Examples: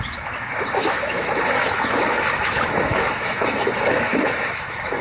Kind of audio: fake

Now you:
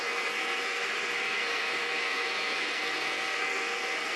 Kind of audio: fake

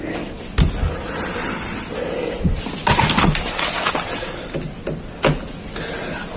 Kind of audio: real